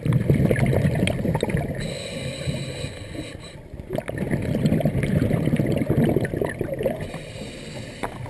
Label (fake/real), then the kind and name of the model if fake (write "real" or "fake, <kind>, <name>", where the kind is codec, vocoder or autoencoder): real